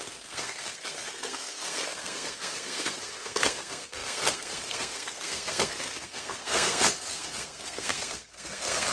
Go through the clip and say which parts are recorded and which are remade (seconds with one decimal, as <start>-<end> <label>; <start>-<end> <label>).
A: 0.0-8.9 remade